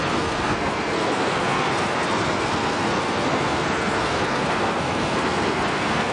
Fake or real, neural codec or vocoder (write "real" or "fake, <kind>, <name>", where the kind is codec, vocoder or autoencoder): fake, codec, SNAC